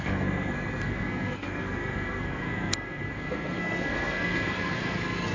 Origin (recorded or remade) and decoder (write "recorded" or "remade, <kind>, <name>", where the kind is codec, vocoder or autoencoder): remade, codec, SNAC